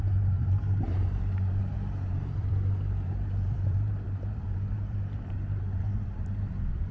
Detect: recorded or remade remade